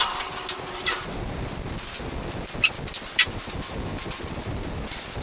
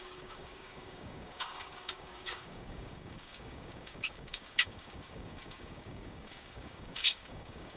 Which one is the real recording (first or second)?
first